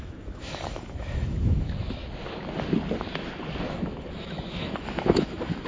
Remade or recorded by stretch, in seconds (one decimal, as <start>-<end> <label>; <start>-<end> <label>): 0.0-2.0 remade; 2.0-3.7 recorded; 3.7-5.7 remade